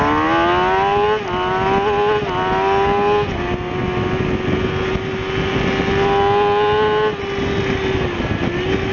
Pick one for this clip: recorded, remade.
recorded